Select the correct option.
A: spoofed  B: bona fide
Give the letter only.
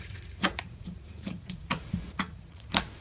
A